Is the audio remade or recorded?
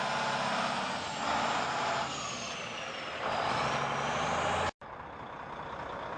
recorded